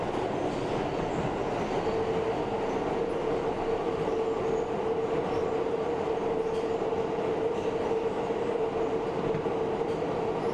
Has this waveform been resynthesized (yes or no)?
no